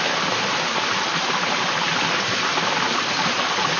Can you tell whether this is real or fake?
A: real